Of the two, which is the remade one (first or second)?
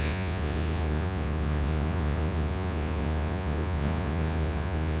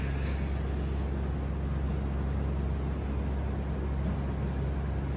first